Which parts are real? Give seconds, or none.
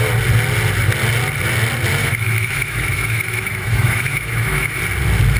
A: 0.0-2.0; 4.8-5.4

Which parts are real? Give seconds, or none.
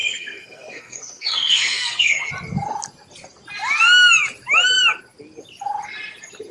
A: 2.3-6.5